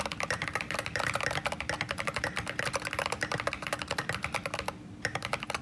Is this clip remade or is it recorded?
recorded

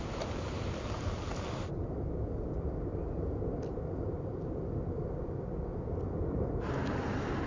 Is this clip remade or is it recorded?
recorded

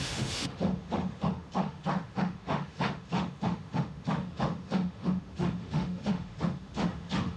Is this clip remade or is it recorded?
remade